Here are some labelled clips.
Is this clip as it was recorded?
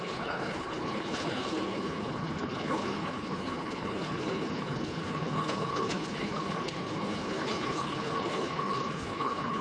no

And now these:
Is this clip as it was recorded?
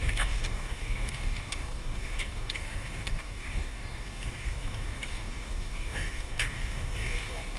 no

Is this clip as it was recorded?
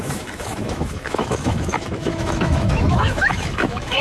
no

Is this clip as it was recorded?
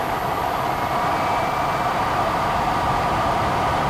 yes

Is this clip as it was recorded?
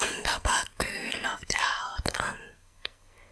no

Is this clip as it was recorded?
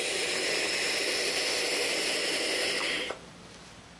yes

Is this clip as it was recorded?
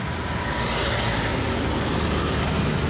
yes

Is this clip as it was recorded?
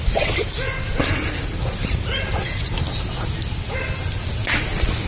yes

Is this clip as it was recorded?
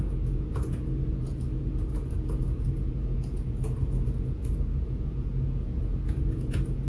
no